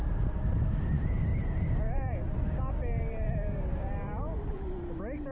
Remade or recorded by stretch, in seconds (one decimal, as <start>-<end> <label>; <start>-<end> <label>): 0.0-1.3 recorded; 1.3-4.5 remade; 4.5-5.3 recorded